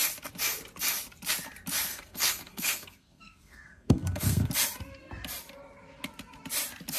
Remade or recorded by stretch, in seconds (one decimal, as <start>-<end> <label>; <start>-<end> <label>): 0.0-1.9 recorded; 1.9-4.5 remade; 4.5-7.0 recorded